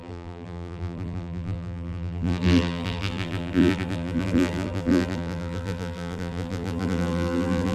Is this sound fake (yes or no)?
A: yes